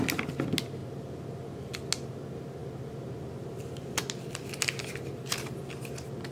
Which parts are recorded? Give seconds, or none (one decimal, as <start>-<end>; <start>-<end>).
0.0-6.3